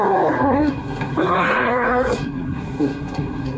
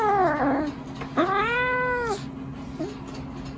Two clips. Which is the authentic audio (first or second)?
second